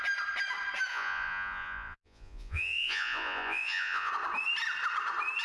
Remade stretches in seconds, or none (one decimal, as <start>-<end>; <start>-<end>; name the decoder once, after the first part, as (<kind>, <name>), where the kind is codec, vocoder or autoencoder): 0.9-4.1 (vocoder, Vocos)